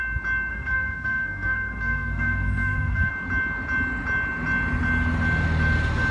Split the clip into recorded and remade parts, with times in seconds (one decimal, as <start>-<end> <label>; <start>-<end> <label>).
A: 0.0-0.5 recorded; 0.5-3.1 remade; 3.1-6.1 recorded